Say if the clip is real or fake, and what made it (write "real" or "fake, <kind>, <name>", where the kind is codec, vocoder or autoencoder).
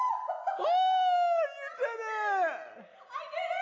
real